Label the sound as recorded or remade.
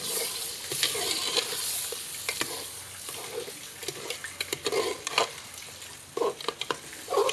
recorded